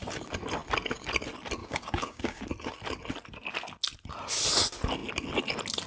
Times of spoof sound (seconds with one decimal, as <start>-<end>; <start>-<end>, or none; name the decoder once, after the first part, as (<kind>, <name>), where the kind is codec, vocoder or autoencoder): 1.6-2.4 (codec, DAC)